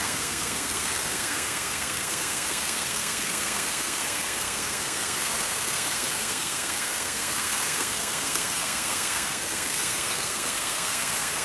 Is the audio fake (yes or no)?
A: yes